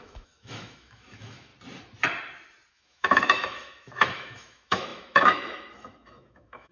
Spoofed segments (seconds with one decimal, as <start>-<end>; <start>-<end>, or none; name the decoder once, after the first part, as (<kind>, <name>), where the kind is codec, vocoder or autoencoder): 0.0-1.5 (autoencoder, DAC-VAE); 2.7-6.7